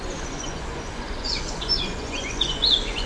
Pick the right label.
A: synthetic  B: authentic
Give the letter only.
A